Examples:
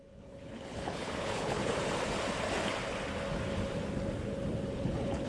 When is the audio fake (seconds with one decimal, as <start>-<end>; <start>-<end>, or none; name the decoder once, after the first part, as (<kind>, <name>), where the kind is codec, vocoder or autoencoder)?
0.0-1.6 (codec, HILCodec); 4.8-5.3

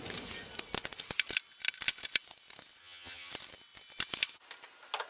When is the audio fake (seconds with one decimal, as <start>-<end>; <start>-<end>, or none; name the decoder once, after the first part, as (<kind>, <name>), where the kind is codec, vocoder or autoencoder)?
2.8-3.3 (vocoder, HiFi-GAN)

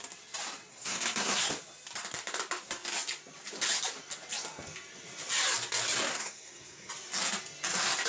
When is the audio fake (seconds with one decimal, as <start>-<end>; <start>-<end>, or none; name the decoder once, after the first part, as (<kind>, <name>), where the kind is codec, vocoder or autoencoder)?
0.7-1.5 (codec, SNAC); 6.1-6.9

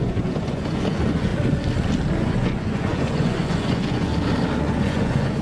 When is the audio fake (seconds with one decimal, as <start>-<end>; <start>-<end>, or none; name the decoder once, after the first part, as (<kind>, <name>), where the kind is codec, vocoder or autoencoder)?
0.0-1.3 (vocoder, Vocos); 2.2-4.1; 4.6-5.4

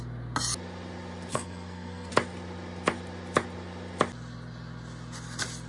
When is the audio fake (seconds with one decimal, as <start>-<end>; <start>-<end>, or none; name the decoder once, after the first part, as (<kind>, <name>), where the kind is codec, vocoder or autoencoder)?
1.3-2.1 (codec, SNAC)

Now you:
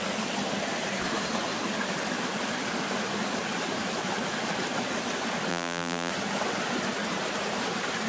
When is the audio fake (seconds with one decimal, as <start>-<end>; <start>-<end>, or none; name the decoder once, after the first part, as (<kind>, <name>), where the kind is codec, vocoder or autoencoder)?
5.5-6.1 (vocoder, BigVGAN v2)